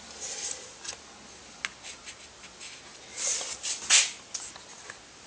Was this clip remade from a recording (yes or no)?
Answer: no